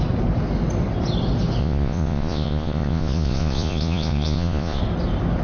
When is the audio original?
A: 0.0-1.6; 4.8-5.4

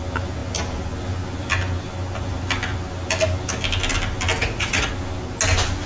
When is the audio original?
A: 0.0-4.4; 4.9-5.9

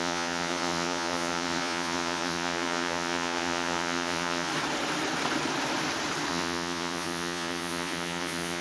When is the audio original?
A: 4.5-6.3

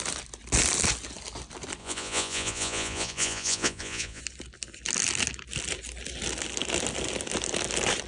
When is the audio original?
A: 0.0-1.8; 4.2-8.1

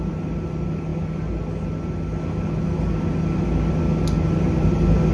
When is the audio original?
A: 0.0-5.1

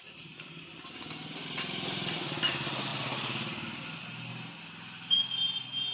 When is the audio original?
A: 0.0-5.9